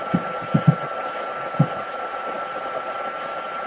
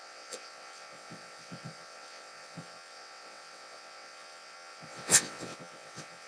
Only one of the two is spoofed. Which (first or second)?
second